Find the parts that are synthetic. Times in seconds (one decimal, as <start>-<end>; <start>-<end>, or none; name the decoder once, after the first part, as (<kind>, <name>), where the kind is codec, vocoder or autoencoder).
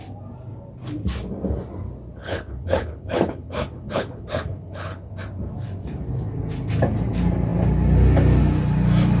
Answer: 2.2-5.1 (codec, HILCodec)